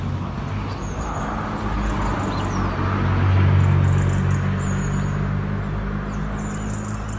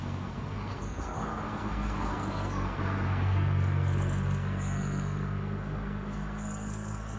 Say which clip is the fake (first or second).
second